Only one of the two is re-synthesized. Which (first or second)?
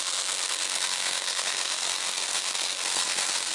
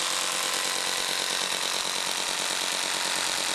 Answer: first